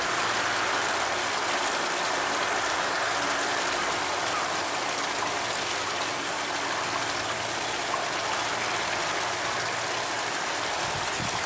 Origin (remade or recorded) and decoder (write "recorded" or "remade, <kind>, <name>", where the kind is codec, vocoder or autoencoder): recorded